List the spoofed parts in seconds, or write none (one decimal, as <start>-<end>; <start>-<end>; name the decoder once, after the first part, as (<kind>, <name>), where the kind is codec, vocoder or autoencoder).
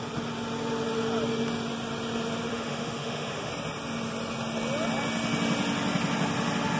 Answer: 2.5-3.5 (autoencoder, DAC-VAE)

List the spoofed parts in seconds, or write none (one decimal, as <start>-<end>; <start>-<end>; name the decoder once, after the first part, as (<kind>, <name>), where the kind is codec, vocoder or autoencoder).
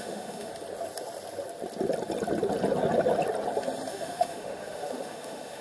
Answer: 0.0-0.5 (autoencoder, DAC-VAE); 3.9-5.6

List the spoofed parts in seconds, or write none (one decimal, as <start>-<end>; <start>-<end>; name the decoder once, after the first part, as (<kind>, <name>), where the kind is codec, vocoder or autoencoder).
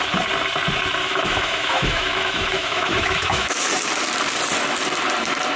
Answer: 1.0-3.7 (autoencoder, DAC-VAE)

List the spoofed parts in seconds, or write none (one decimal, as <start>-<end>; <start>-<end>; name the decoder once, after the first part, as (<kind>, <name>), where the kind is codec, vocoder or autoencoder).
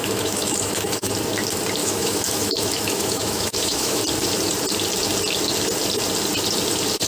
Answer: 0.0-1.1 (autoencoder, DAC-VAE); 1.8-4.0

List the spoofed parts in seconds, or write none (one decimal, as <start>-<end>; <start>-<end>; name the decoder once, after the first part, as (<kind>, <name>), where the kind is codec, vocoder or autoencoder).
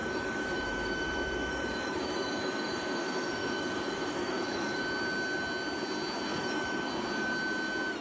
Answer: 0.0-4.8 (autoencoder, DAC-VAE); 6.3-6.9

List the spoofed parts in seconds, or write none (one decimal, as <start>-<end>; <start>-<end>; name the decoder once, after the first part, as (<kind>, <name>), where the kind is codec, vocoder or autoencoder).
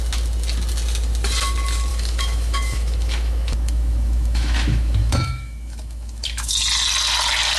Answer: 1.9-6.5 (autoencoder, DAC-VAE)